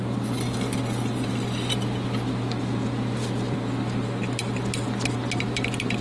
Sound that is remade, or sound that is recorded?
recorded